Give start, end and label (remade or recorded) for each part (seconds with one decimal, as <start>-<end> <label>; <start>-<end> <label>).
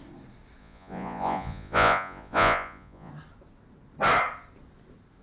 0.0-0.6 recorded; 0.6-3.1 remade; 3.1-5.2 recorded